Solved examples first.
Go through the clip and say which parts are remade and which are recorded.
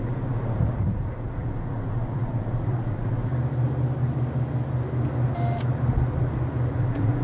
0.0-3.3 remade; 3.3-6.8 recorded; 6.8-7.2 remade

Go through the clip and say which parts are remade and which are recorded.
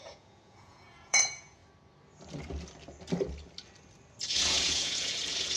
0.0-1.6 remade; 1.6-4.3 recorded; 4.3-5.6 remade